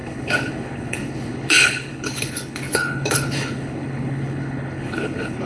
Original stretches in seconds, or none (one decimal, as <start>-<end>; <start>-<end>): none